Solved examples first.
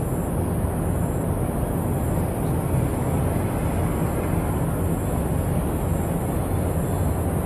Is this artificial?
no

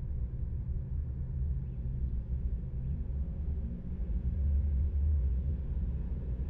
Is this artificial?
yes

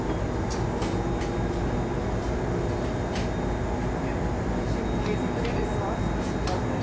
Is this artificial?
no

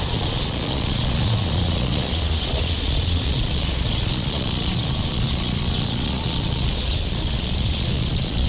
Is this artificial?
yes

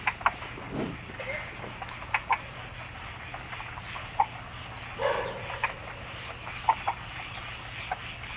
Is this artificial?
no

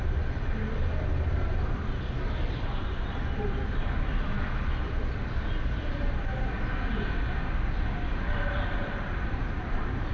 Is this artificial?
no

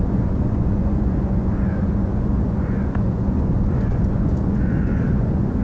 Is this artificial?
yes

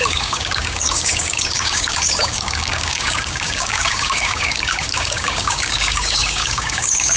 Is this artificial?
yes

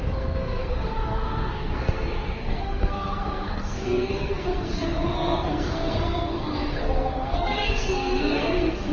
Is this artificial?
yes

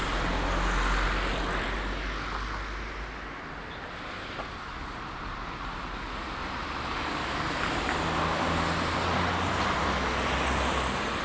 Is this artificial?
no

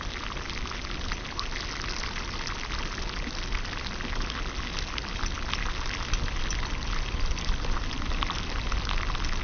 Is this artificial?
no